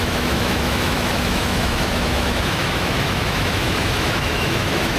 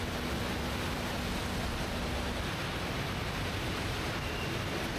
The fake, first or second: first